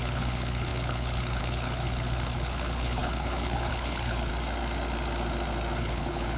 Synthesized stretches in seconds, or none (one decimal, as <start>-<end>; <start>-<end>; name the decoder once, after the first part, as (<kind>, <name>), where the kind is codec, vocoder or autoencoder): 0.0-4.3 (codec, HILCodec); 5.8-6.4